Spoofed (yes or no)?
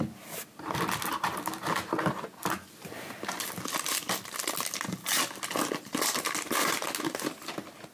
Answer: no